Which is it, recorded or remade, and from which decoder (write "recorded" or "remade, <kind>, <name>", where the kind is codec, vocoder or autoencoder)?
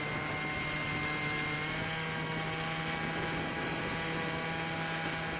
recorded